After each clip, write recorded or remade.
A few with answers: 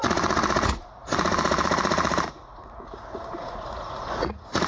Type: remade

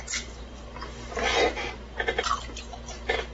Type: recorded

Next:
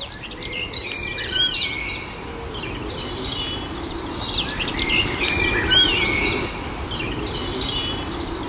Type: recorded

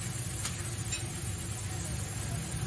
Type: recorded